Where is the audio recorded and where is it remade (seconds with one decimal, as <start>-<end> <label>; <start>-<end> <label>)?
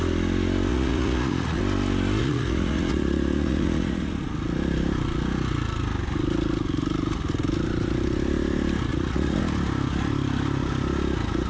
0.0-0.7 recorded; 0.7-1.6 remade; 1.6-2.2 recorded; 2.2-4.1 remade; 4.1-8.9 recorded; 8.9-9.4 remade; 9.4-11.5 recorded